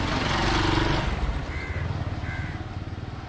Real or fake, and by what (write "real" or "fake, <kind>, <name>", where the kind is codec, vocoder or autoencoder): real